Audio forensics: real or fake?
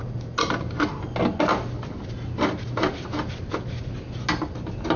real